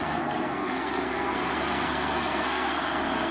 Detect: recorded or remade remade